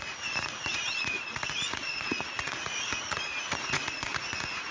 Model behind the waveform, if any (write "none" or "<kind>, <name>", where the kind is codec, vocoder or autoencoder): vocoder, Vocos